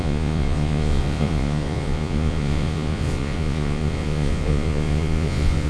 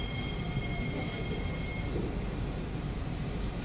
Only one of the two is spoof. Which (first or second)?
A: first